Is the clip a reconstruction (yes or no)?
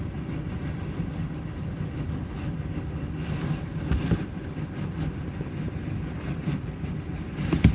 no